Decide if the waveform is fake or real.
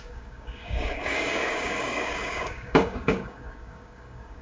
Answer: fake